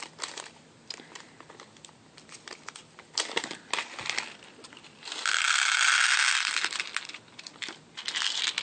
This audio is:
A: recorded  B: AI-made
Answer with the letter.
A